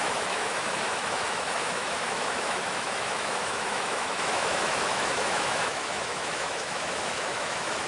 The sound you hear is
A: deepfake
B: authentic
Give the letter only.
A